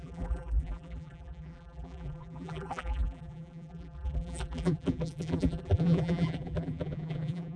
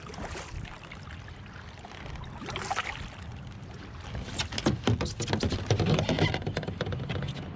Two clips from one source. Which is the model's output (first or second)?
first